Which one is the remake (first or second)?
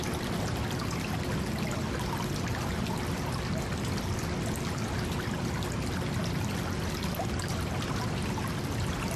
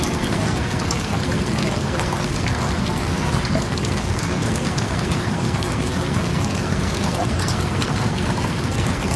second